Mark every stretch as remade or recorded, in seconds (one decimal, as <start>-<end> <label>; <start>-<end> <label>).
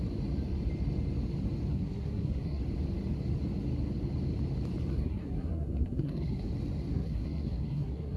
0.0-1.7 recorded; 1.7-2.6 remade; 2.6-4.9 recorded; 4.9-6.5 remade; 6.5-6.9 recorded; 6.9-8.2 remade